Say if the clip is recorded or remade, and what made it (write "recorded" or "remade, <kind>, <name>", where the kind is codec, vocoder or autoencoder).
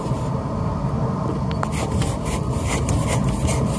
recorded